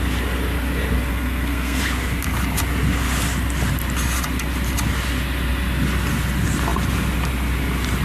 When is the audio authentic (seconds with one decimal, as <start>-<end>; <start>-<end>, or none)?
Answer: 0.0-1.1; 1.8-8.0